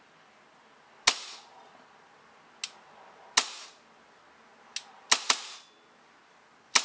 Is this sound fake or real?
real